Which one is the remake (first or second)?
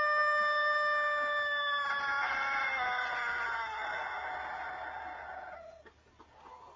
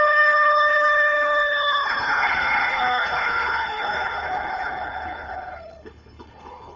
second